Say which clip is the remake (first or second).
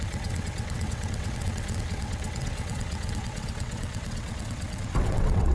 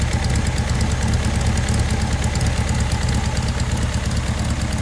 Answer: first